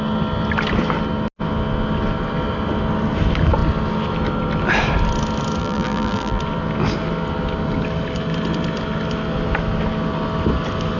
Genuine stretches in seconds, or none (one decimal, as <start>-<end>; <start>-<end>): 0.0-5.6; 6.4-11.0